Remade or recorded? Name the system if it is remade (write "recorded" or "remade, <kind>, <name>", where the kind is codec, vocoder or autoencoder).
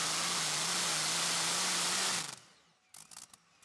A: recorded